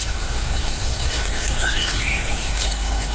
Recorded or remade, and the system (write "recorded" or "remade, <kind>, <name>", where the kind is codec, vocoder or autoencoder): remade, codec, SNAC